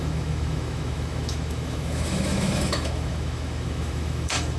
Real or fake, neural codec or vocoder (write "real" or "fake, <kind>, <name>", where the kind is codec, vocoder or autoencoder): fake, autoencoder, DAC-VAE